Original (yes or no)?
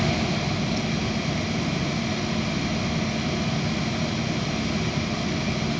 yes